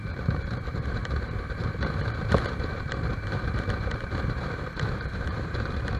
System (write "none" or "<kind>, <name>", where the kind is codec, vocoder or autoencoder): vocoder, BigVGAN v2